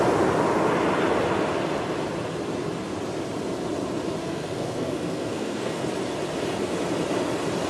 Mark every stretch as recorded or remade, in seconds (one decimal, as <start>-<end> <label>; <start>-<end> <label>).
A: 0.0-4.2 recorded; 4.2-5.9 remade; 5.9-7.7 recorded